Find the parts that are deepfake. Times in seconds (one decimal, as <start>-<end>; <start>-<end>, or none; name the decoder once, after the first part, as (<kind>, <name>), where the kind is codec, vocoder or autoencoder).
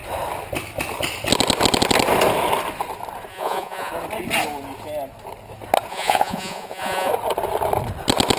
3.3-3.9 (vocoder, Vocos); 5.9-7.1